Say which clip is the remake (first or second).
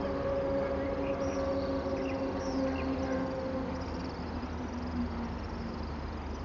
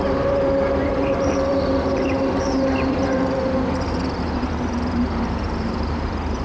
second